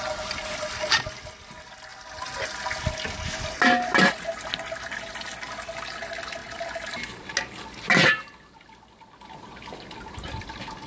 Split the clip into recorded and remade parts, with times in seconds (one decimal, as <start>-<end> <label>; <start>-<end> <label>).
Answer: 0.0-10.9 recorded

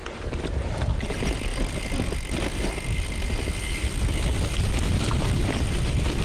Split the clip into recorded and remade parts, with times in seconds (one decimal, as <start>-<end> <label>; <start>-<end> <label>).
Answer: 0.0-6.2 recorded

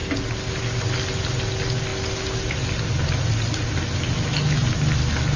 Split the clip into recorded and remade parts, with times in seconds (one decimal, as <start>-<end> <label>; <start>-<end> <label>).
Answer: 0.0-5.4 recorded

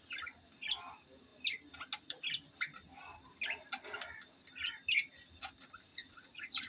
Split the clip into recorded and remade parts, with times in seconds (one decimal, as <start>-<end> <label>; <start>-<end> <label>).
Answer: 0.0-5.9 recorded; 5.9-6.7 remade